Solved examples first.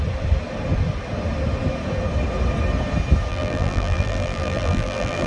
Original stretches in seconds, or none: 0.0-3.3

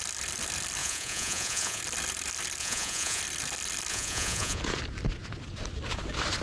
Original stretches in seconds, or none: 0.0-0.8; 1.8-2.6; 3.2-3.9; 4.6-6.4